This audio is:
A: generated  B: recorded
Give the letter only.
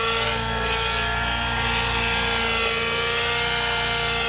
B